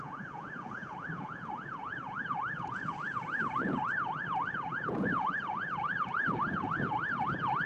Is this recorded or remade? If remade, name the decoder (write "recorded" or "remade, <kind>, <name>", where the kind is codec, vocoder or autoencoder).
remade, vocoder, Vocos